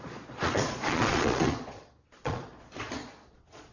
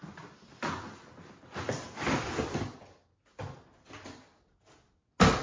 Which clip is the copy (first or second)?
first